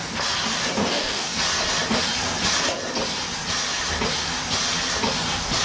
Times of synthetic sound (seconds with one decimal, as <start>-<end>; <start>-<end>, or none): 0.8-1.4